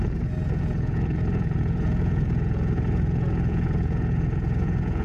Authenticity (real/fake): fake